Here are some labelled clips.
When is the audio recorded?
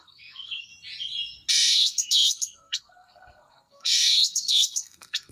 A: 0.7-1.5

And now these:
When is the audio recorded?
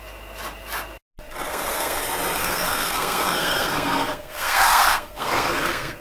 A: 0.0-1.5; 2.0-2.4